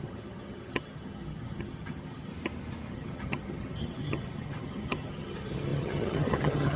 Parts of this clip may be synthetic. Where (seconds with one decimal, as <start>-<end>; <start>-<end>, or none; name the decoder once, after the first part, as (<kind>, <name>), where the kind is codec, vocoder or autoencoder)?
0.0-2.3 (vocoder, HiFi-GAN); 2.9-6.8